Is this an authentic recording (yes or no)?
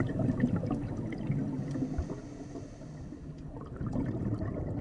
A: yes